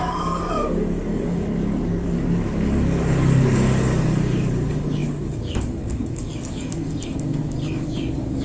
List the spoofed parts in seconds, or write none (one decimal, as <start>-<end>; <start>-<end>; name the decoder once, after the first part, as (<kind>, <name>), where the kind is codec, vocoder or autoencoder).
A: 0.0-8.4 (codec, DAC)